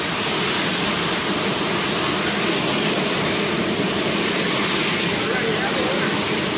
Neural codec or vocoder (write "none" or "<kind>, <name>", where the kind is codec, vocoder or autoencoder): vocoder, BigVGAN v2